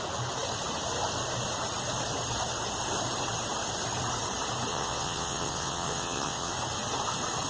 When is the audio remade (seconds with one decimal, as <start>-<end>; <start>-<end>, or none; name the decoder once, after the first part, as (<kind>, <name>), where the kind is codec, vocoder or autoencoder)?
4.7-6.5 (vocoder, WaveNeXt)